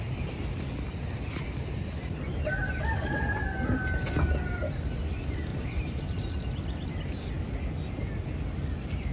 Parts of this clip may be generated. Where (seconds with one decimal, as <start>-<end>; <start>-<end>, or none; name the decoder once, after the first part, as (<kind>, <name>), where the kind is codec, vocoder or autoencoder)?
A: 5.5-7.3 (vocoder, BigVGAN v2)